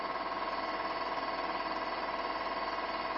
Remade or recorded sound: recorded